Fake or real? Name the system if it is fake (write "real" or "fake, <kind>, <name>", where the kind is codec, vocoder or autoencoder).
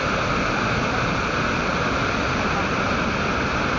real